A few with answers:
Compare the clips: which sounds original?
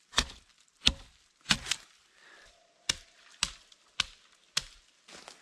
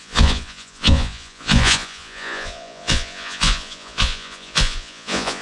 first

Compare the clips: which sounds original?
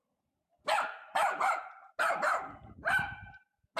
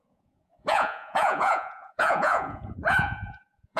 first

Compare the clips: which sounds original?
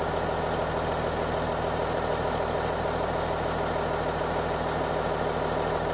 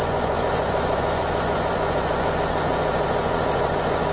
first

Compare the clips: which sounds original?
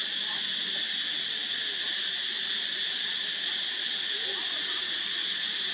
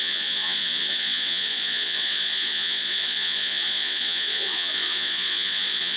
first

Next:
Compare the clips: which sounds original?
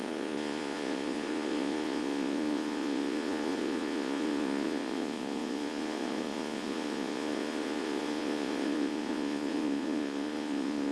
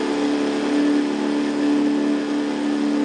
second